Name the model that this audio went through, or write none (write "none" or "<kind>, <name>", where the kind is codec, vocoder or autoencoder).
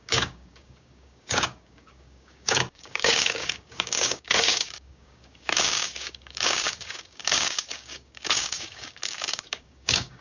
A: codec, DAC